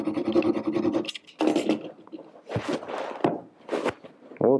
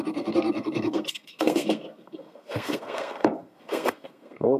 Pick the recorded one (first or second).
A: first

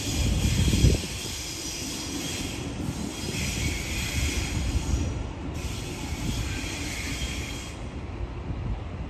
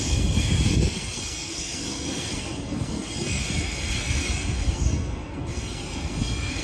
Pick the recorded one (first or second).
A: first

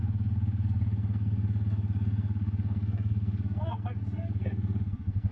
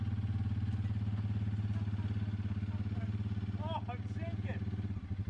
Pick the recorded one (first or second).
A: second